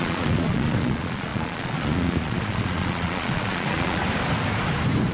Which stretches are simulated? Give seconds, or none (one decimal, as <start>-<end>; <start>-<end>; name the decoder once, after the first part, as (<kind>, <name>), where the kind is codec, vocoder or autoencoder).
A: 0.0-4.0 (vocoder, Vocos)